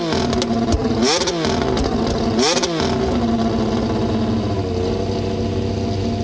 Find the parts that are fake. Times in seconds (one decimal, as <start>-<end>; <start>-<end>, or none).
none